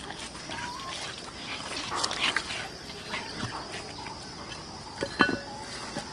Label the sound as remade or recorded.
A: recorded